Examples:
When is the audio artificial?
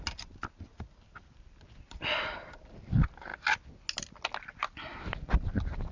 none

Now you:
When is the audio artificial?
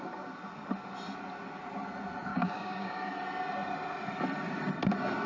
2.3-3.1 (codec, DAC)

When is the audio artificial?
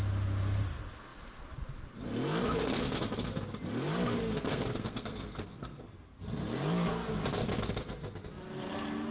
4.5-5.8 (codec, SNAC)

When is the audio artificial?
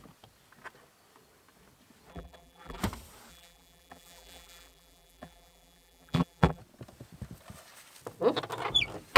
2.1-2.8 (vocoder, BigVGAN v2); 3.3-6.6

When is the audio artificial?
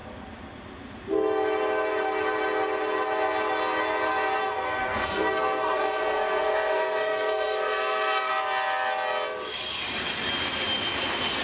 4.4-8.3 (codec, SNAC)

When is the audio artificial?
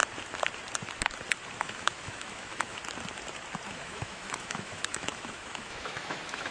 1.6-2.8 (autoencoder, DAC-VAE); 3.7-6.5